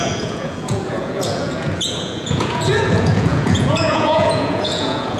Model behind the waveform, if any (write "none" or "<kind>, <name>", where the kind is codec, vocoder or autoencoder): vocoder, Vocos